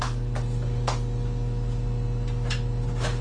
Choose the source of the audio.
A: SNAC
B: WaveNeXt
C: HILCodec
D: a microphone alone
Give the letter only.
D